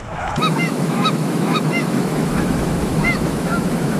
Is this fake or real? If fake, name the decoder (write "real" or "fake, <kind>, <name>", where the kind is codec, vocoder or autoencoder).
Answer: fake, autoencoder, DAC-VAE